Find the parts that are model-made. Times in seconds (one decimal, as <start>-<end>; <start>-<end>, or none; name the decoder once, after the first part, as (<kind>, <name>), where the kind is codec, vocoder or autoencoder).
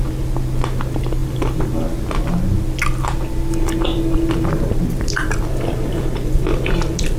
1.2-2.0 (vocoder, BigVGAN v2); 3.9-7.2